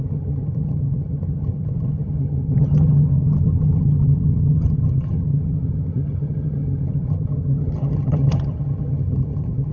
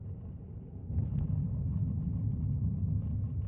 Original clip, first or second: second